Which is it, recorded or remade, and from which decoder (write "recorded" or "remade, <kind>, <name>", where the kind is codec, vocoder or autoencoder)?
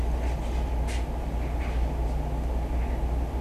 recorded